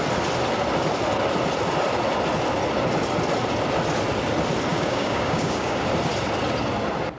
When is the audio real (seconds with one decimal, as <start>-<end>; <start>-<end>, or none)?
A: 0.0-4.7; 5.8-7.2